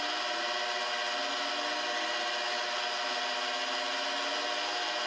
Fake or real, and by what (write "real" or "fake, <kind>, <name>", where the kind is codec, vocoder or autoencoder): real